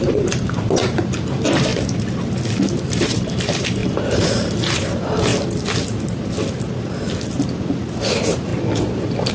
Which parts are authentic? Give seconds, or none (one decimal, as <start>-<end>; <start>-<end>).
1.7-2.8; 5.3-8.0; 8.5-9.3